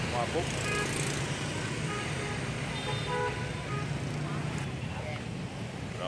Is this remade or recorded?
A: recorded